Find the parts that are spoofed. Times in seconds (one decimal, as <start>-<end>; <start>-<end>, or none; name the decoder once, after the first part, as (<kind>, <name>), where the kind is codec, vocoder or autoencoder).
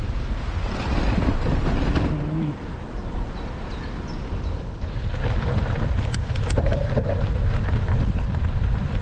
3.0-3.7 (vocoder, BigVGAN v2); 4.2-9.0